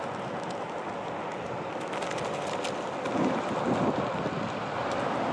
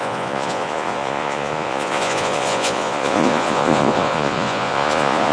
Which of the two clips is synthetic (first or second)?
second